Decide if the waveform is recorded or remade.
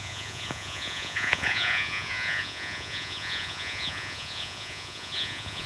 remade